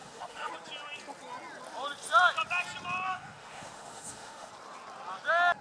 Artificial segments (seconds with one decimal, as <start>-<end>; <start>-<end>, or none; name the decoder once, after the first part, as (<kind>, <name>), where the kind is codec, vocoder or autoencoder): 0.0-0.5 (autoencoder, DAC-VAE); 3.1-4.5